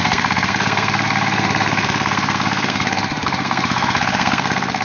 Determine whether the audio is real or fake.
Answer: fake